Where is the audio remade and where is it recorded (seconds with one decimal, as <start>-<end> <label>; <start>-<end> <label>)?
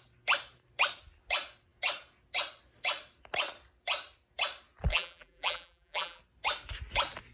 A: 0.0-4.9 recorded; 4.9-6.2 remade; 6.2-7.3 recorded